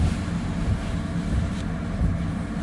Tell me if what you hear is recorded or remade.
recorded